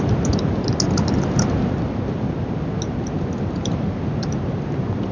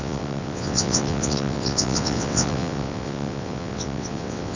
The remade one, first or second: second